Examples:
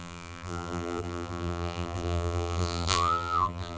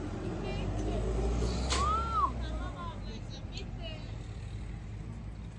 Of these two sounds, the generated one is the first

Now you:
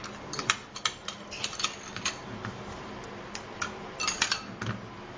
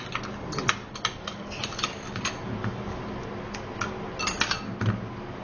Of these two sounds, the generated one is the first